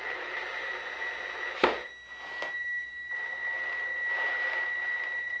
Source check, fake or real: real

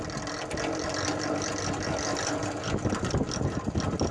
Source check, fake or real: real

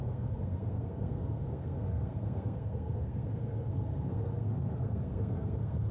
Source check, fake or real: fake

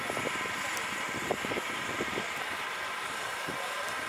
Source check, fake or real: fake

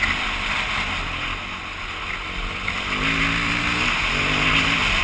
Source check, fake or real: real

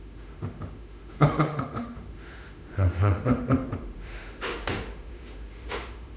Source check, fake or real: fake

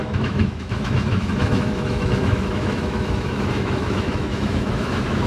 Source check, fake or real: fake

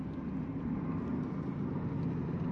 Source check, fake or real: real